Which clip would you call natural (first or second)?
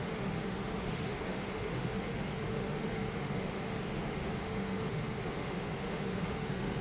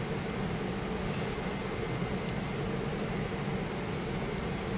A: second